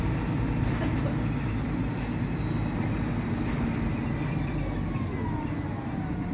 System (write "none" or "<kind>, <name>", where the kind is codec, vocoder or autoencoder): none